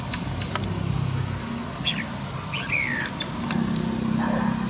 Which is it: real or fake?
real